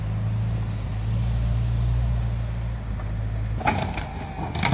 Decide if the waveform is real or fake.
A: real